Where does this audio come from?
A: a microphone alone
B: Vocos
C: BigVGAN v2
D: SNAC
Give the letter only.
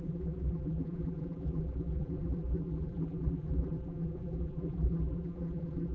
C